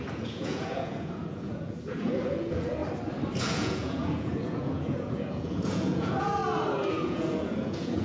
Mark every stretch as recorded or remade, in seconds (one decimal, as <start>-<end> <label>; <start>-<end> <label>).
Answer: 0.0-2.8 remade; 2.8-3.4 recorded; 3.4-6.4 remade; 6.4-6.9 recorded; 6.9-8.0 remade